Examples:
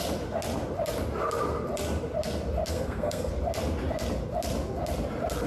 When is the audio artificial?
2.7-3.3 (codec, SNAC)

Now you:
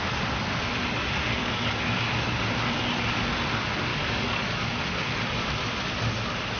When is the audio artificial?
1.4-2.0 (codec, DAC); 3.9-4.8

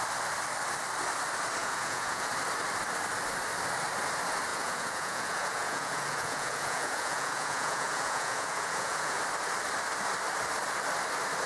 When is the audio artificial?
1.6-2.3 (vocoder, Vocos); 4.5-9.2

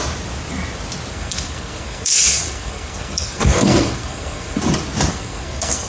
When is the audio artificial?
1.1-4.6 (codec, SNAC); 5.1-5.9

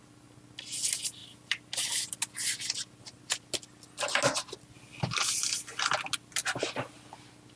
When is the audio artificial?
none

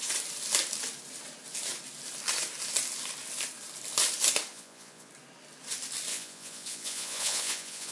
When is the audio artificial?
4.5-5.1 (vocoder, Vocos); 6.1-7.9

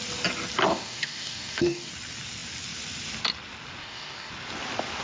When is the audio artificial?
0.7-1.9 (codec, DAC); 3.8-4.3